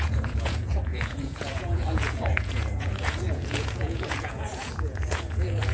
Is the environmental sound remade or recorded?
remade